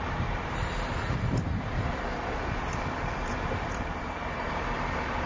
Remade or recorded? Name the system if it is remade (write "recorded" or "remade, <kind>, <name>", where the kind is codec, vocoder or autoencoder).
remade, vocoder, BigVGAN v2